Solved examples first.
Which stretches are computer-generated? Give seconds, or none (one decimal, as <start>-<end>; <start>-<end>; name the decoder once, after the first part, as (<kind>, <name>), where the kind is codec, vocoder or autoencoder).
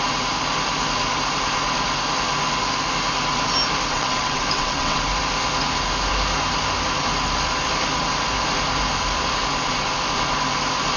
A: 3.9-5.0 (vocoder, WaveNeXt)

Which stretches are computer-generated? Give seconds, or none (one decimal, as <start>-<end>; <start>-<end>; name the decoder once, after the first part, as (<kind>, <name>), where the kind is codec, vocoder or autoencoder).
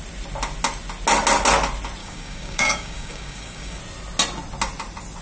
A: 2.0-3.8 (codec, DAC)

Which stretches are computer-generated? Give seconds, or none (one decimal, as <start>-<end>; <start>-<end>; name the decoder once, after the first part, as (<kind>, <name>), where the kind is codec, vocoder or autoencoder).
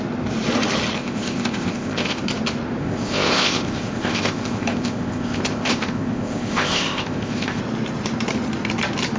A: 1.0-2.2 (codec, ZipCodec); 2.8-7.6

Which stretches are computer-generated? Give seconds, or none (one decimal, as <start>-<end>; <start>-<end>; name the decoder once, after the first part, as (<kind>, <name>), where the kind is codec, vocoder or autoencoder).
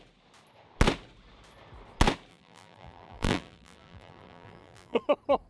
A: 2.3-5.0 (vocoder, BigVGAN v2)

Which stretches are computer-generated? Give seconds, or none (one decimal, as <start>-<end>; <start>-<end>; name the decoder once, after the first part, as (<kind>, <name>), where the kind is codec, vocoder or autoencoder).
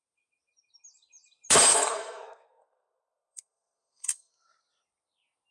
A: 1.7-4.3 (codec, SNAC)